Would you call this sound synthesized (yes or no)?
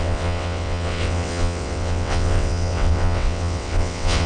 yes